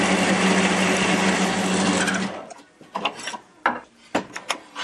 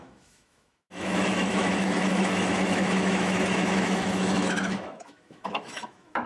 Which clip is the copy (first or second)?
second